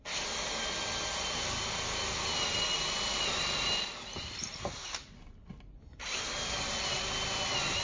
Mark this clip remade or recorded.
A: recorded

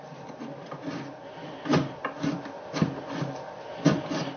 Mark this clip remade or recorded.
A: recorded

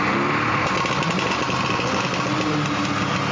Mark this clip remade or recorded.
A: recorded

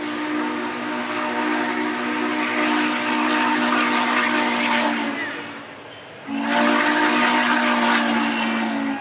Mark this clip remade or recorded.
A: recorded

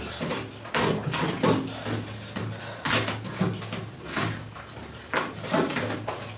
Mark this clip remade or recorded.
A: recorded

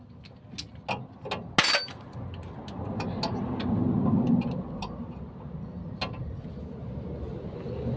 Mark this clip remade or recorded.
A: recorded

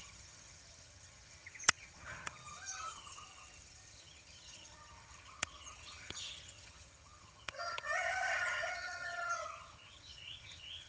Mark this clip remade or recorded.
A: remade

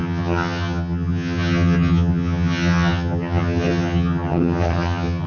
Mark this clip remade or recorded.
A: remade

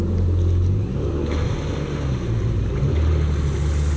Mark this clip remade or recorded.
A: recorded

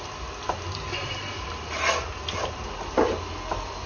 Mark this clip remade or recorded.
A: recorded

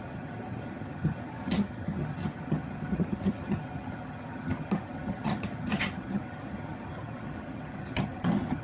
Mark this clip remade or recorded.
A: remade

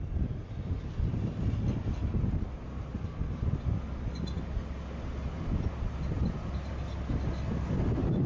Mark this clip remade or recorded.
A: recorded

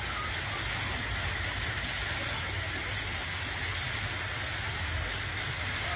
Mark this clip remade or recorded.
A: recorded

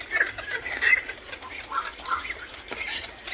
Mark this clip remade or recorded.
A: recorded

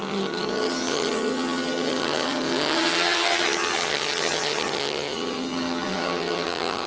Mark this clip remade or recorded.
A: remade